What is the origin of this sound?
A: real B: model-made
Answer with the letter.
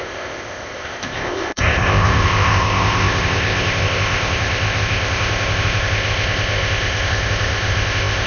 B